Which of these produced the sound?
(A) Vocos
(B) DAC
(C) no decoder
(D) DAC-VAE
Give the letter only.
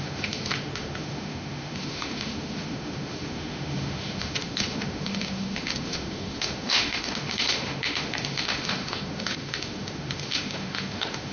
D